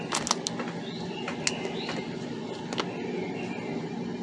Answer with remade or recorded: recorded